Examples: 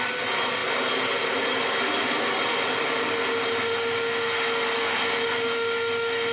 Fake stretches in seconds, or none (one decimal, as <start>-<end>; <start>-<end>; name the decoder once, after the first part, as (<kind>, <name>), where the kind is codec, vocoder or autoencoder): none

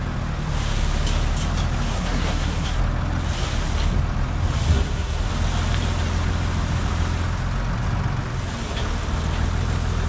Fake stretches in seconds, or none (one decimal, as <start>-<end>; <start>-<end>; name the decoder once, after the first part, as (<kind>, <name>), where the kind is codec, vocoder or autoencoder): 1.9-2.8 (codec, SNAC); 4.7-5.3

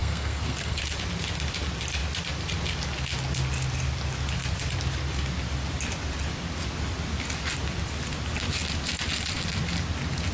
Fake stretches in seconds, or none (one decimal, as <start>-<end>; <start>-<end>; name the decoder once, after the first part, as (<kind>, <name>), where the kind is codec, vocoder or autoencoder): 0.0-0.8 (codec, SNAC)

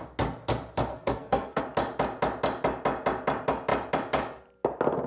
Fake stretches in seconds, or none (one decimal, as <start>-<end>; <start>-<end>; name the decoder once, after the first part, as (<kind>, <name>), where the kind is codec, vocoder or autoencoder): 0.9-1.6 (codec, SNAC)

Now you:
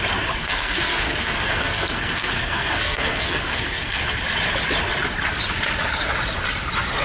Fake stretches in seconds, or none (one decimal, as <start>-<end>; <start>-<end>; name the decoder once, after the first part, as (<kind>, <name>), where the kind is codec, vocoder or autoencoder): 0.4-4.0 (codec, SNAC)

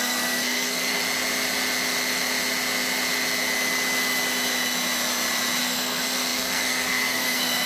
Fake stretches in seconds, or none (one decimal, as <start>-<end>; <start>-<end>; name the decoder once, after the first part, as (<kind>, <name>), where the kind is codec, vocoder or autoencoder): 0.0-1.0 (codec, SNAC); 5.6-7.7